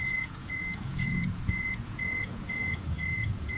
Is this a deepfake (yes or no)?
yes